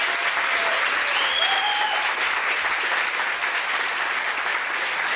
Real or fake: real